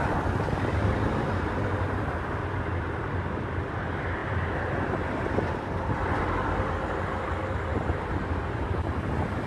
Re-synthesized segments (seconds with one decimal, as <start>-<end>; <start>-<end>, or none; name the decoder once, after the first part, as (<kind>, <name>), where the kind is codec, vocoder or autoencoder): none